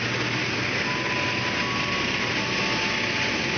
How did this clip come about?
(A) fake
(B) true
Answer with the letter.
B